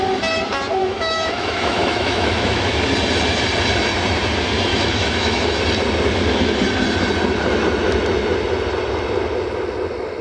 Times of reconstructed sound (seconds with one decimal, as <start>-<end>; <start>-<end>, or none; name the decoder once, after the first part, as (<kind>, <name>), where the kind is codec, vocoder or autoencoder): 0.8-2.8 (autoencoder, DAC-VAE); 4.7-5.6